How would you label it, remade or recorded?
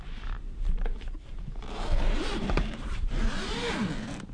remade